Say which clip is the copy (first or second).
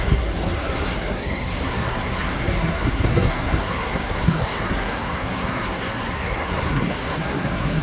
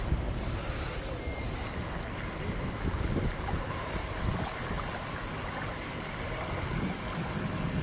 first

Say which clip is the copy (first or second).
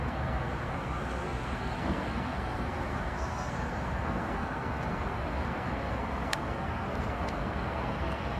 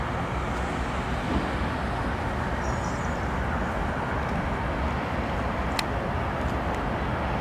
first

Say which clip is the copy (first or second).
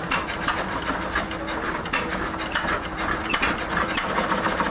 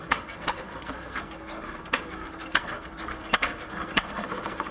second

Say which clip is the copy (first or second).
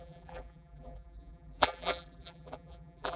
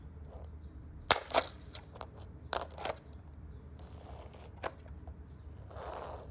first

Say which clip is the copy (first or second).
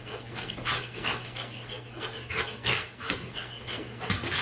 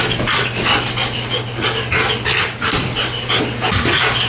first